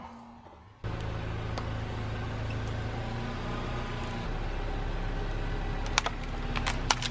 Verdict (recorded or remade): recorded